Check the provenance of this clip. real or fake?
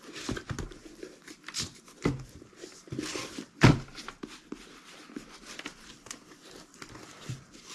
real